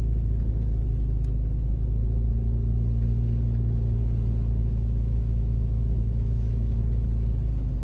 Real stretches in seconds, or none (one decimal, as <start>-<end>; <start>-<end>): 0.0-4.6; 6.8-7.8